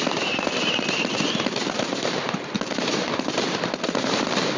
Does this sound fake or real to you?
fake